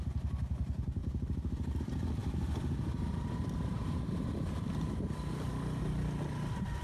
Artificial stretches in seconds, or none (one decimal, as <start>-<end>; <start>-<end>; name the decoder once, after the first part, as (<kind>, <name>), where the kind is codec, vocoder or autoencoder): 1.0-1.8 (vocoder, BigVGAN v2)